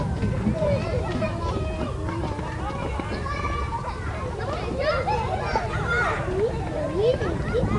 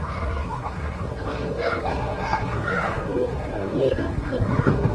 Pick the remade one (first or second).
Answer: second